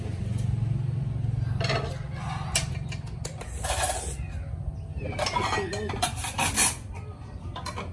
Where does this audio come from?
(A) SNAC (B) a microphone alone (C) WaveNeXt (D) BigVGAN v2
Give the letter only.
B